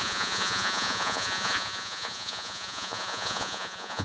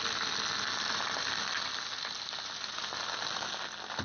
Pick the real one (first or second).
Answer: second